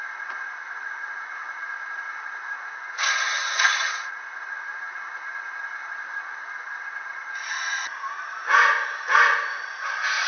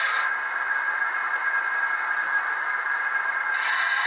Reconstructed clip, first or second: first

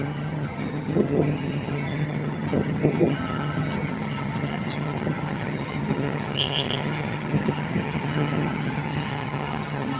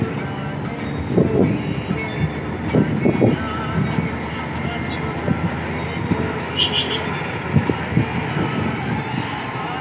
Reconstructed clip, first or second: first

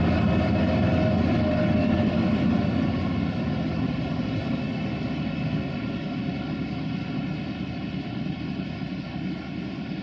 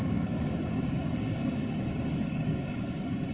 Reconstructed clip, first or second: second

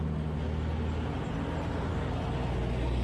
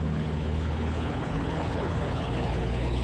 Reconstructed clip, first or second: second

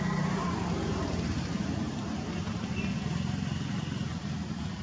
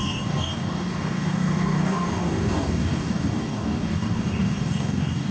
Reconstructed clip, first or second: second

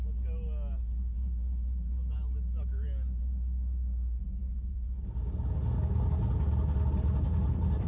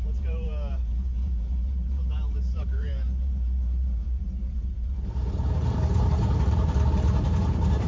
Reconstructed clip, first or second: second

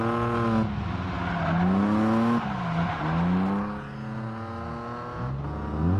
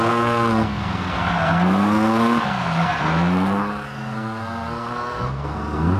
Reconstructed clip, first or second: second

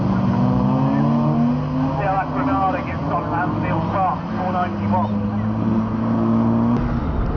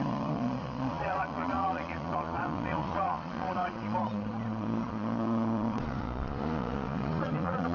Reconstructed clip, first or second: second